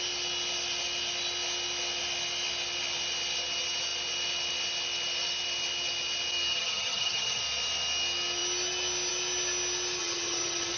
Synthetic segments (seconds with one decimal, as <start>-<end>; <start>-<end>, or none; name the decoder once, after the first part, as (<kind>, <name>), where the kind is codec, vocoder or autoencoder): 6.5-7.4 (vocoder, HiFi-GAN); 10.0-10.8